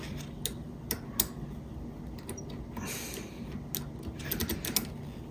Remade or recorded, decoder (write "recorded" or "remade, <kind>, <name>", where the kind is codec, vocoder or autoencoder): recorded